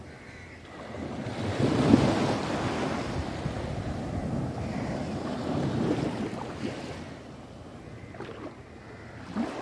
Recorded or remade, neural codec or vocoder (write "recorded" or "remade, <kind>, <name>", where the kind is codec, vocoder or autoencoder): recorded